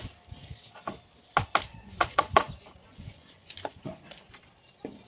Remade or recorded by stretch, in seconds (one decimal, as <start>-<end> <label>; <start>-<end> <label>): 0.0-1.7 recorded; 1.7-2.5 remade; 2.5-2.9 recorded; 2.9-4.2 remade; 4.2-5.1 recorded